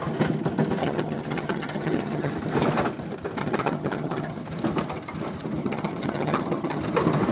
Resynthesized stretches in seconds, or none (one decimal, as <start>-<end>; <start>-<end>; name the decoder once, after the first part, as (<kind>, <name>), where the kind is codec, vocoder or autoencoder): 0.8-2.3 (vocoder, HiFi-GAN); 3.4-4.4; 5.6-6.8

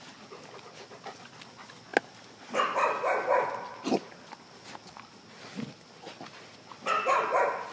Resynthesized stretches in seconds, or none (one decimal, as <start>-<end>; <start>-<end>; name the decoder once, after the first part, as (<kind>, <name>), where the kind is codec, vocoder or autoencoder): none